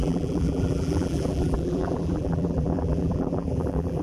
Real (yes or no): no